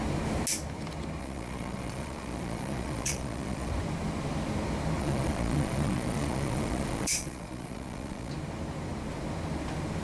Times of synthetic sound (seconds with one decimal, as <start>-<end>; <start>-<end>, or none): 1.2-3.7; 5.0-8.3